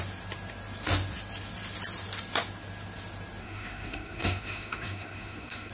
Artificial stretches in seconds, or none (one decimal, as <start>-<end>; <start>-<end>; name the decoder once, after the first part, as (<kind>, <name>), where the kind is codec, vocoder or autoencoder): 3.4-5.7 (codec, SNAC)

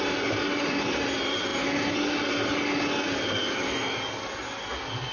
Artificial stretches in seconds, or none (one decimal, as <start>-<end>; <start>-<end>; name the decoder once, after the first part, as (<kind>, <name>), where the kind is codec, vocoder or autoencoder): none

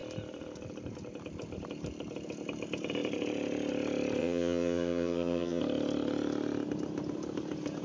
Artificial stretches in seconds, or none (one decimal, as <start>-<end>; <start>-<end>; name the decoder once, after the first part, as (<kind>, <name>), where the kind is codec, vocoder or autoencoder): 4.2-5.6 (vocoder, HiFi-GAN)

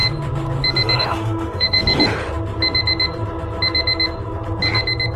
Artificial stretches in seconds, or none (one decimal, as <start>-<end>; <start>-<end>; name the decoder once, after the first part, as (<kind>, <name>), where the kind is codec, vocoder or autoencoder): 1.0-1.8 (autoencoder, DAC-VAE)